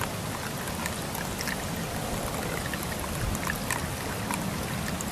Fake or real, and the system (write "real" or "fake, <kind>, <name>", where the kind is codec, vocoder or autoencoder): real